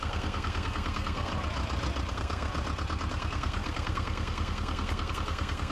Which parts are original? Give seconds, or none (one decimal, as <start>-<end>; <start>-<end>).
1.3-2.1; 2.5-3.1